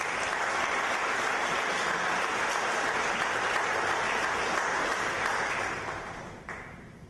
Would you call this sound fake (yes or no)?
no